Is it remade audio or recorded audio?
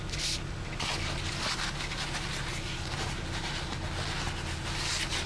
recorded